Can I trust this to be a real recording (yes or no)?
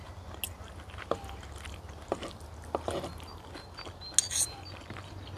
yes